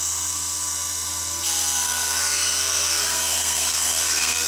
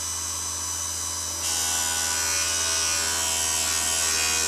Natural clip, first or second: second